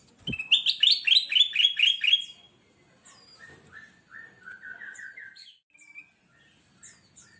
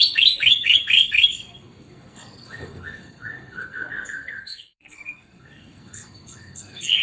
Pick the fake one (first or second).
second